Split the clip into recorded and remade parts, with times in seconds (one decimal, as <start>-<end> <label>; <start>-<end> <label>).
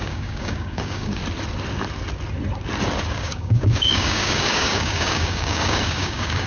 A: 0.0-1.2 remade; 1.2-3.1 recorded; 3.1-6.5 remade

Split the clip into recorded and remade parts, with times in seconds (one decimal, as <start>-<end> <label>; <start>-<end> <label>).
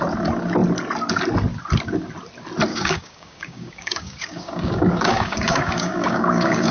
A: 0.0-2.7 recorded; 2.7-6.7 remade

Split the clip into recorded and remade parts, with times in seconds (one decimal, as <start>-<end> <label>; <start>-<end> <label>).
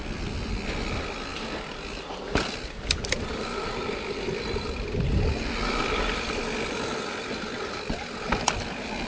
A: 0.0-9.1 recorded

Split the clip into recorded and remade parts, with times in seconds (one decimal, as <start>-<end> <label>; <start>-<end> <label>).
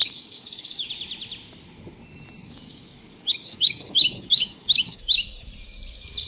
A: 0.0-0.9 remade; 0.9-2.4 recorded; 2.4-5.5 remade; 5.5-6.3 recorded